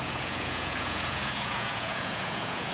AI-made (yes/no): yes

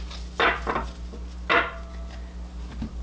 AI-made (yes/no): no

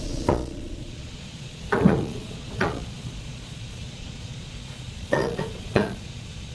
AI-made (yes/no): yes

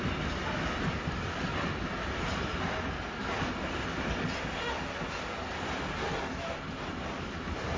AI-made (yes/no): no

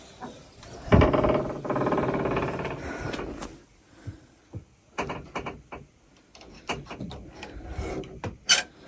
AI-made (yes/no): no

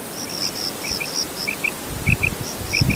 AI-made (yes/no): no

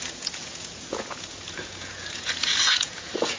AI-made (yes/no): yes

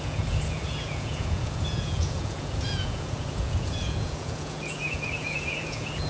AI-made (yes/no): yes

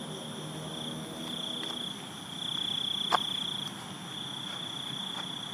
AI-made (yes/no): no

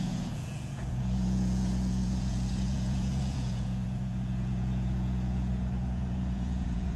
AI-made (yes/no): yes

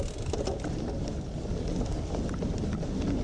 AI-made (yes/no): no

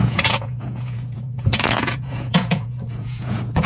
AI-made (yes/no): yes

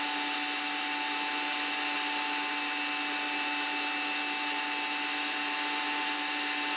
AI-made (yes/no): no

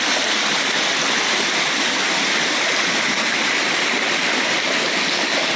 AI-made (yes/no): no